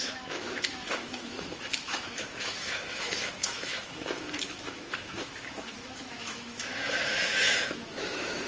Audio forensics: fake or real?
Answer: fake